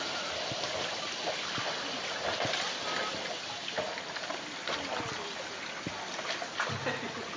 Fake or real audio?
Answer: real